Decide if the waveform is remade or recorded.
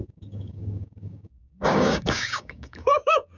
remade